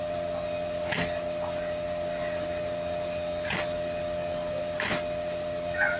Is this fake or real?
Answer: real